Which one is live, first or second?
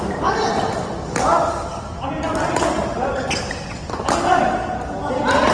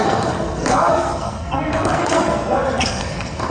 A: first